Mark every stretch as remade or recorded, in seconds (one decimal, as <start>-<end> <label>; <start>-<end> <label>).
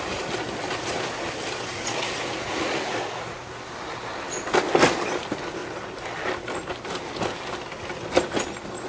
0.0-1.7 recorded; 1.7-3.5 remade; 3.5-8.9 recorded